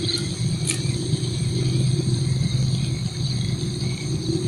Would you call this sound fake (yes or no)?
yes